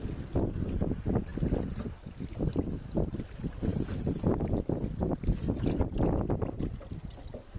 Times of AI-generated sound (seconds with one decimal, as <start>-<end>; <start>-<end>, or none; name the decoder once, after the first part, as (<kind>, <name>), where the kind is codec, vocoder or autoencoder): 3.7-5.8 (vocoder, BigVGAN v2)